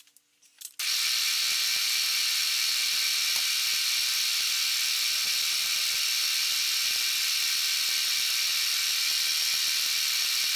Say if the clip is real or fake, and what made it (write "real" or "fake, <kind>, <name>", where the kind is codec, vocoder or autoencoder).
real